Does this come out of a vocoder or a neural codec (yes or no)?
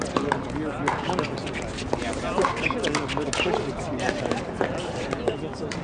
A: no